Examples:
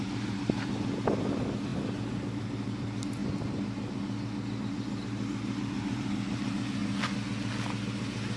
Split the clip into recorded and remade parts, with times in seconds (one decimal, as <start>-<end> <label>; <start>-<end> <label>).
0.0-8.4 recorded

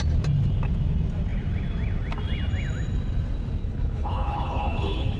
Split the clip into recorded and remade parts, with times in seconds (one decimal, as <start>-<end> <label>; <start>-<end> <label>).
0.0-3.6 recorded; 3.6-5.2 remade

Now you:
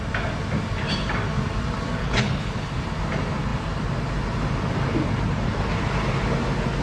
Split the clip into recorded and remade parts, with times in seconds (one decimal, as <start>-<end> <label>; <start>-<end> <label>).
0.0-2.0 recorded; 2.0-2.7 remade; 2.7-6.8 recorded

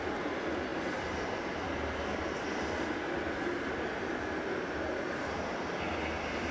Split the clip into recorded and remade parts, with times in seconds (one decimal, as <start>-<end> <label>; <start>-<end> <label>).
0.0-6.5 recorded

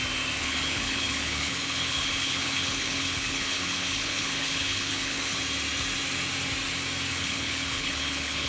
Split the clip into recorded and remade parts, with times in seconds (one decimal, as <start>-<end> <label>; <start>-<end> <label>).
0.0-0.4 recorded; 0.4-5.4 remade; 5.4-7.1 recorded; 7.1-8.5 remade